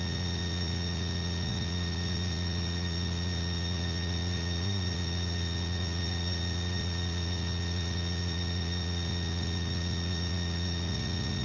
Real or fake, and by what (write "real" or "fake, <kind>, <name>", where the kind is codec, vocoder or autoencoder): fake, vocoder, Vocos